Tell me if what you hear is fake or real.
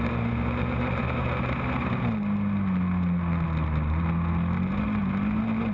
real